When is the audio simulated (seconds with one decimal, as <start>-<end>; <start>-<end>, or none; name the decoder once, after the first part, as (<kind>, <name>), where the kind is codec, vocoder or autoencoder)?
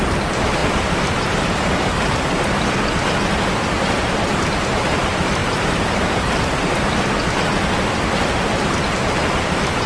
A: 5.4-6.4 (vocoder, BigVGAN v2)